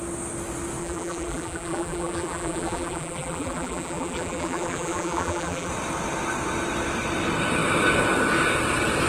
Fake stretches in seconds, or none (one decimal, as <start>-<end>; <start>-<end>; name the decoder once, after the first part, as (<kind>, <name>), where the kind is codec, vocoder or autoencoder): 0.8-5.7 (vocoder, BigVGAN v2)